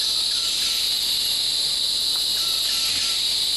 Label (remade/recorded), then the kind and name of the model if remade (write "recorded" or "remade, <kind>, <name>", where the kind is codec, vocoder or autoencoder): recorded